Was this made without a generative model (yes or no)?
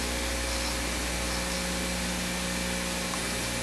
yes